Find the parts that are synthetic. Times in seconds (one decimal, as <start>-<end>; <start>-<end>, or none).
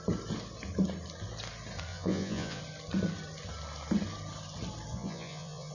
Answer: 1.9-2.6; 4.9-5.7